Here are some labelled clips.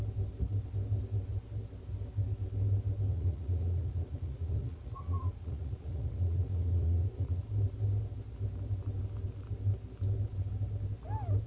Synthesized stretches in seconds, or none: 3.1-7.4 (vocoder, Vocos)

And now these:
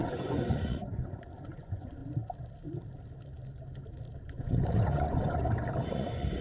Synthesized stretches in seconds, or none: 0.0-2.0 (vocoder, Vocos); 4.2-5.4; 5.9-6.4

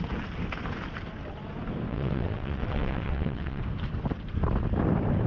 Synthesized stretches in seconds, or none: 1.9-3.6 (vocoder, WaveNeXt)

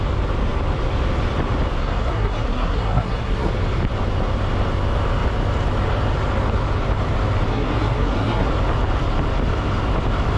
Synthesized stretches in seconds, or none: 1.8-3.5 (codec, SNAC); 7.5-8.5